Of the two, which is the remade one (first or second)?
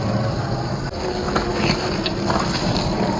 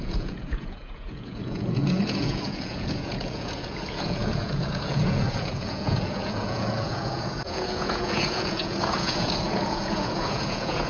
second